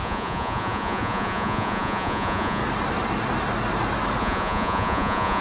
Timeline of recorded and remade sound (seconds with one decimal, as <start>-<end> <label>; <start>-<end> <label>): 0.0-2.6 remade; 2.6-4.2 recorded; 4.2-5.4 remade